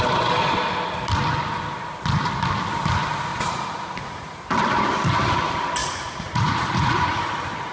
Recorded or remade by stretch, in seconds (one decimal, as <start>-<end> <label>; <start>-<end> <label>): 0.0-3.3 recorded; 3.3-4.4 remade; 4.4-5.8 recorded; 5.8-7.2 remade; 7.2-7.7 recorded